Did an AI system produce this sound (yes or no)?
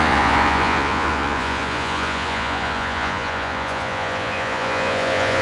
yes